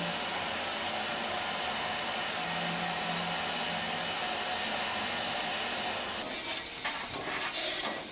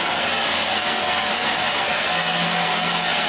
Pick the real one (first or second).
first